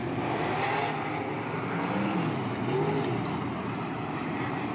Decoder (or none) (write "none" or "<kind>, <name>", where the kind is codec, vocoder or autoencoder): none